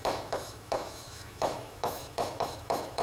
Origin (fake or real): fake